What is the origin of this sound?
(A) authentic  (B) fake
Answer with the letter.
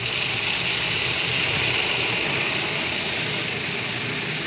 A